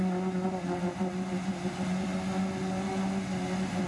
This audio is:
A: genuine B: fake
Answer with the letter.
A